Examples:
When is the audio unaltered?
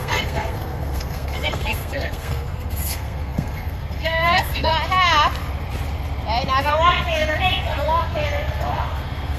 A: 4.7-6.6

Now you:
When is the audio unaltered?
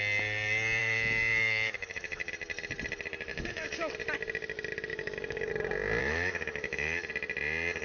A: 0.0-0.8; 2.3-3.3; 3.9-4.9; 5.5-6.0; 7.1-7.8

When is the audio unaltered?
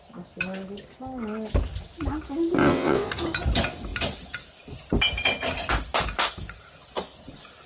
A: 0.0-2.6; 3.1-7.7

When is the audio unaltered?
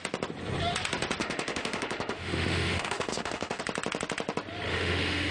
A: 0.0-1.2; 3.6-4.7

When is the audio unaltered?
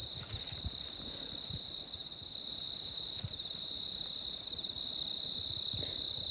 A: 0.0-6.3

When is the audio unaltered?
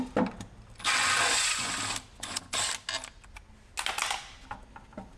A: 0.0-1.0; 1.7-2.1; 2.6-5.2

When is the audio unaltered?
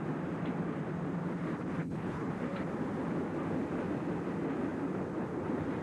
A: 0.0-1.8; 2.3-5.8